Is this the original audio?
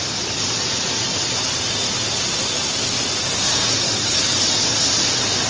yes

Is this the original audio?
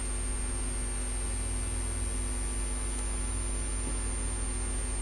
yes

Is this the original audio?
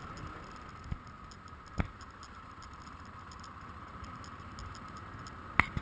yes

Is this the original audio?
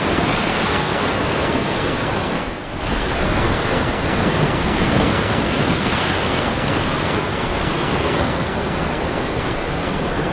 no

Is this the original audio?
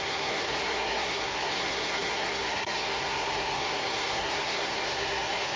no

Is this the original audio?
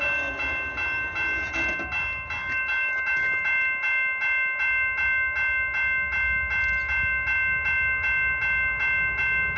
yes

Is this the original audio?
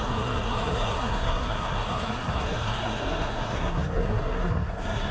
no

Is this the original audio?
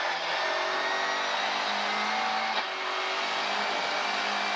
yes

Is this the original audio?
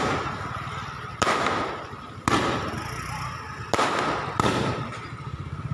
yes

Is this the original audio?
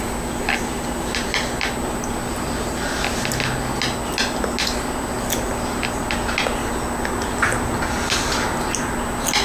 yes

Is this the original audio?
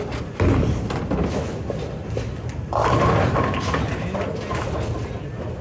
yes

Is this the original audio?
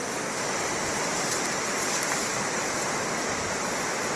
yes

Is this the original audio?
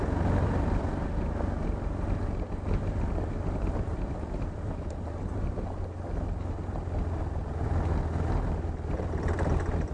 yes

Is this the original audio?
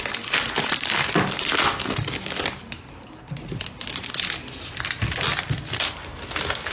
yes